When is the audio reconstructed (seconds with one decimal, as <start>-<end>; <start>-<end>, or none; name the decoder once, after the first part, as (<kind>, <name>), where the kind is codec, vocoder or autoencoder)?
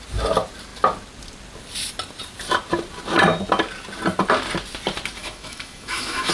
5.2-6.3 (autoencoder, DAC-VAE)